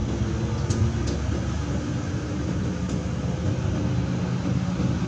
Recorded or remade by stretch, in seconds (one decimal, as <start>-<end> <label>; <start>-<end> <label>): 0.0-5.1 recorded